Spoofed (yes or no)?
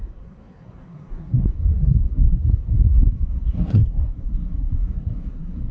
yes